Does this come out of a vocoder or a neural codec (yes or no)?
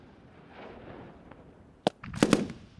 no